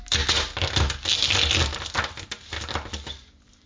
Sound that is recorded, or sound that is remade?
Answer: recorded